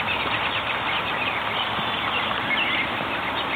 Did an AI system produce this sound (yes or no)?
no